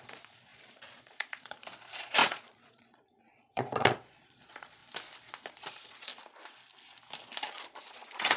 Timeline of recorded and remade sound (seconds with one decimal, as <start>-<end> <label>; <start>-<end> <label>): 0.0-4.8 remade; 4.8-5.5 recorded; 5.5-6.1 remade; 6.1-7.6 recorded; 7.6-8.4 remade